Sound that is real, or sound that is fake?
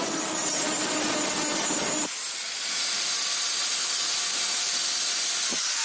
real